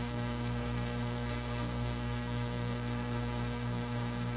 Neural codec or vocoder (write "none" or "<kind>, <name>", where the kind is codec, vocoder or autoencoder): codec, SNAC